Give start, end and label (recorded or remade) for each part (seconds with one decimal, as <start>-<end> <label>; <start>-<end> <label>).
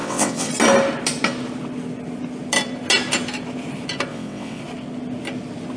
0.0-0.5 remade; 0.5-4.1 recorded; 4.1-4.6 remade; 4.6-5.8 recorded